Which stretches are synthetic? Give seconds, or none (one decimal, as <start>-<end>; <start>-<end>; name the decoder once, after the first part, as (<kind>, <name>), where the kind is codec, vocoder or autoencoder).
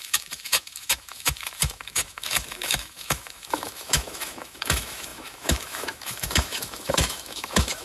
0.0-7.8 (autoencoder, DAC-VAE)